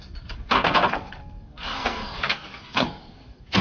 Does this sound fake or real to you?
fake